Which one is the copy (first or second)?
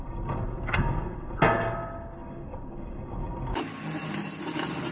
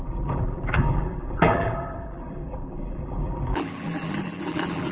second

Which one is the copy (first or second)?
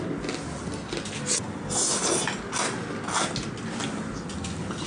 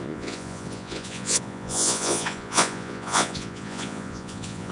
second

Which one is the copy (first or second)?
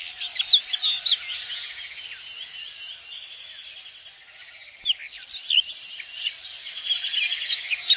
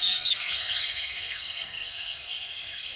second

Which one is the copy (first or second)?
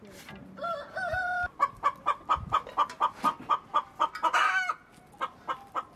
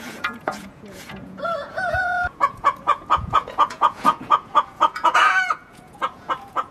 second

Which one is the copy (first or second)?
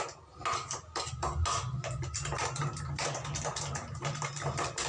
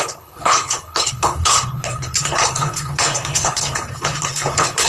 second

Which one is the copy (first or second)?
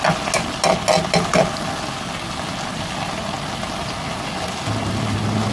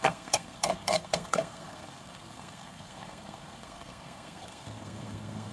second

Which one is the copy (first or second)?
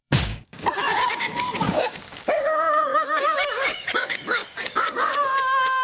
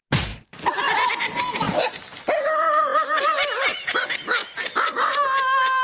first